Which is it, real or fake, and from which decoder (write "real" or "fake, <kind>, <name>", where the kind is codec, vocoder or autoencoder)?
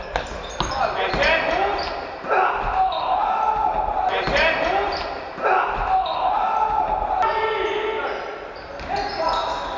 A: real